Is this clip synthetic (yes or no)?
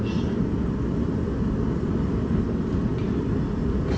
no